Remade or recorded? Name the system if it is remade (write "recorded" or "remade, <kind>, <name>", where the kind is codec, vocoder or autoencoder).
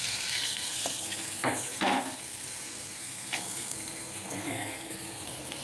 remade, codec, SNAC